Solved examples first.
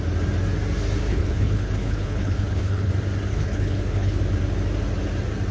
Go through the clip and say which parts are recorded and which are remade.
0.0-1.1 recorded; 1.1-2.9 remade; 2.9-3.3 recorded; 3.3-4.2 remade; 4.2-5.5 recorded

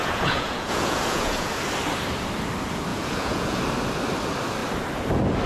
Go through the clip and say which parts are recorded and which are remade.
0.0-1.5 remade; 1.5-2.9 recorded; 2.9-3.6 remade; 3.6-5.5 recorded

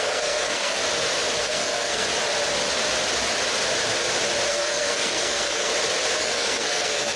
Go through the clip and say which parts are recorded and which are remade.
0.0-0.8 remade; 0.8-1.4 recorded; 1.4-2.1 remade; 2.1-4.5 recorded; 4.5-5.7 remade; 5.7-6.2 recorded; 6.2-7.2 remade